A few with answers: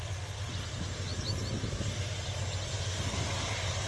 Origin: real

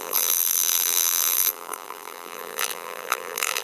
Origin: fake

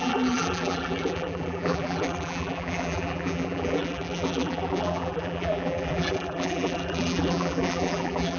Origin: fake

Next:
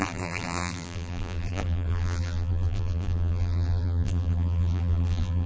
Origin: fake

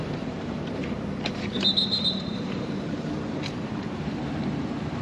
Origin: fake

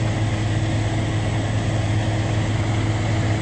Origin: real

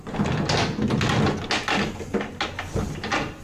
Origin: real